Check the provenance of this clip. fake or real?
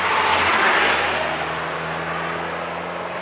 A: real